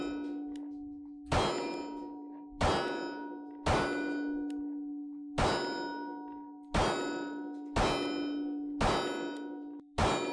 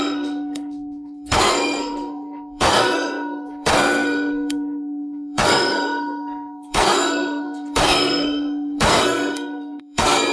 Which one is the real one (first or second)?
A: first